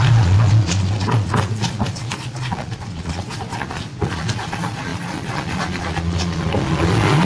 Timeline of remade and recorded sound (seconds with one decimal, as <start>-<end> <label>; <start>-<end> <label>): 0.0-7.2 remade

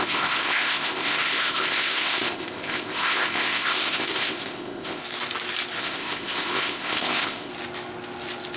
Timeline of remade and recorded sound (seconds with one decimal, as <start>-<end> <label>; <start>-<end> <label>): 0.0-5.0 remade; 5.0-5.8 recorded; 5.8-7.5 remade; 7.5-8.6 recorded

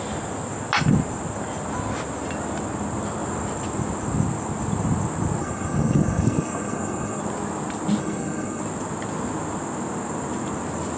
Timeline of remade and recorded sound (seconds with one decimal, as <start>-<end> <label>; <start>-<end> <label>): 0.0-5.4 recorded; 5.4-7.2 remade; 7.2-8.0 recorded; 8.0-8.6 remade; 8.6-11.0 recorded

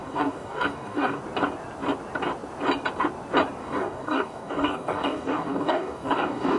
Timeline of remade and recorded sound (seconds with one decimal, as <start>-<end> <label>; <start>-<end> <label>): 0.0-1.2 remade; 1.2-3.6 recorded; 3.6-6.6 remade

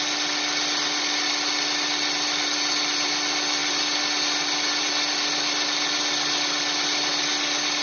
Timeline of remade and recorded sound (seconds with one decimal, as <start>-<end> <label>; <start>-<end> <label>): 0.0-7.8 recorded

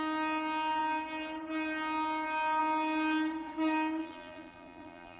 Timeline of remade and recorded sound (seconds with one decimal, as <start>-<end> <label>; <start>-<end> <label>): 0.0-4.0 recorded; 4.0-5.2 remade

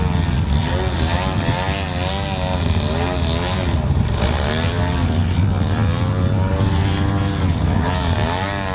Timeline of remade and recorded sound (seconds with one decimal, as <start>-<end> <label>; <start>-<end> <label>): 0.0-8.7 recorded